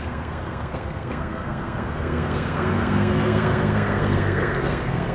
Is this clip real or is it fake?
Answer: fake